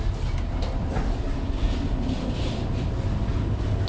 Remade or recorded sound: recorded